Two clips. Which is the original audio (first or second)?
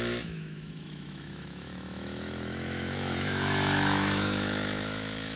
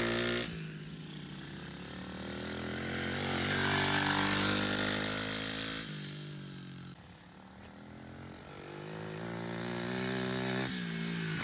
second